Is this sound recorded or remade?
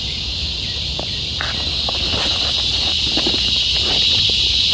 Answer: recorded